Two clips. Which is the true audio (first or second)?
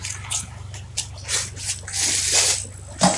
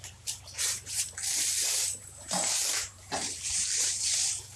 first